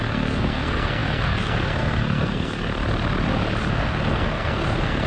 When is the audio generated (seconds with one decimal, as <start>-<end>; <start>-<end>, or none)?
0.0-2.7; 3.7-5.1